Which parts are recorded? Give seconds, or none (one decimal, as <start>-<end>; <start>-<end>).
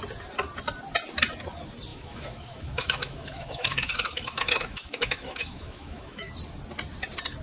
0.0-1.9; 6.3-7.4